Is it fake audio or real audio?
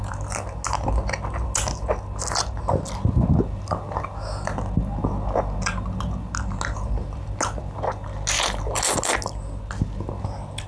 real